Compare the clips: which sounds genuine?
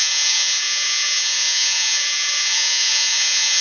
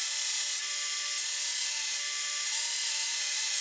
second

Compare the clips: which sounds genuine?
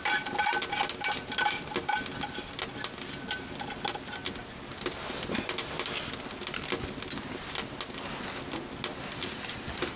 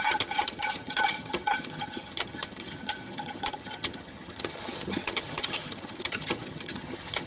first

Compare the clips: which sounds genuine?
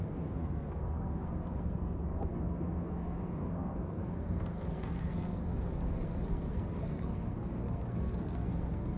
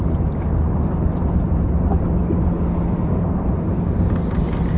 second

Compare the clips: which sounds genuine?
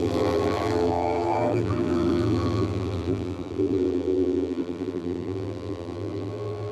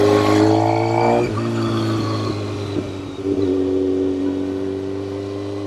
second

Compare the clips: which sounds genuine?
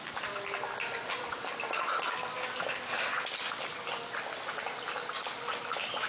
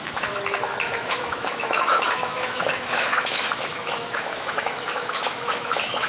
first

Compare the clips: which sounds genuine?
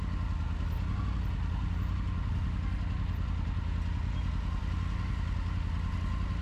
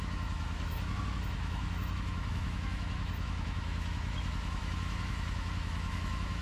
first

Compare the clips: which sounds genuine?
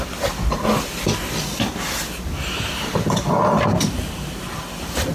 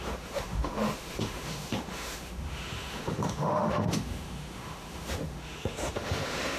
first